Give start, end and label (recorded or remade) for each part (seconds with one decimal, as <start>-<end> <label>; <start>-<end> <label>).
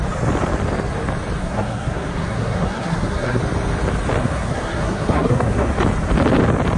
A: 0.0-1.4 recorded; 1.4-3.4 remade; 3.4-4.2 recorded; 4.2-5.7 remade; 5.7-6.8 recorded